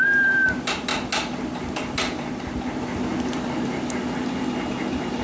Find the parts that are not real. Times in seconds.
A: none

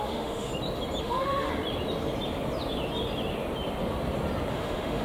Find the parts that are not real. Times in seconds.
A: 0.0-0.5; 1.0-1.5; 4.5-5.0

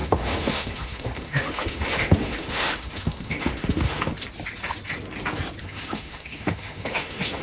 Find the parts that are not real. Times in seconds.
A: 0.0-4.1; 5.6-7.4

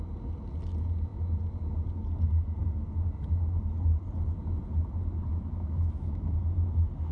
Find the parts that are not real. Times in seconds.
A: 5.3-6.3

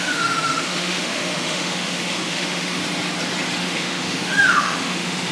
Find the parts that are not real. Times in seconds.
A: 0.0-2.8; 3.6-5.3

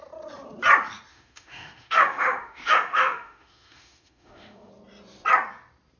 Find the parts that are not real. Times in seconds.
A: 1.1-4.7

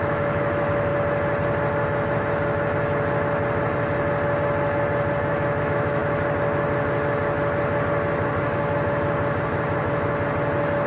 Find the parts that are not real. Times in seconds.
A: 0.0-0.9; 5.6-6.0

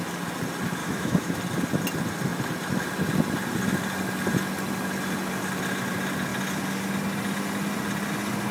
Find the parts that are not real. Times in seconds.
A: 0.8-1.4